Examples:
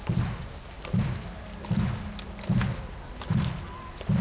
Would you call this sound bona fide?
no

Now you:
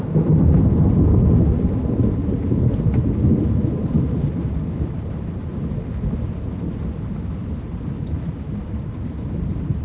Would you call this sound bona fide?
yes